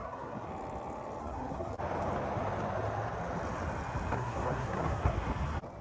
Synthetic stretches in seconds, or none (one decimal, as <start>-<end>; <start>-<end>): 0.0-0.5; 1.2-1.7; 4.1-5.3